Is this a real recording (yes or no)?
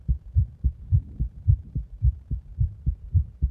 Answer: no